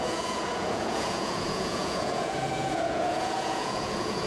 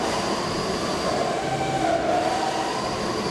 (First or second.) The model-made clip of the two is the first